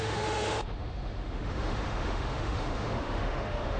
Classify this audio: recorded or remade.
remade